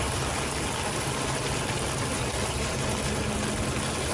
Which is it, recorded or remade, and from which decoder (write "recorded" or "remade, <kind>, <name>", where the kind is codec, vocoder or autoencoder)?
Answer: recorded